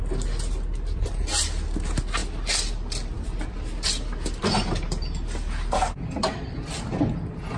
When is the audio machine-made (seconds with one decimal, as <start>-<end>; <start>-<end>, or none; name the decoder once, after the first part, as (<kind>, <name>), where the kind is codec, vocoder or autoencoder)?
none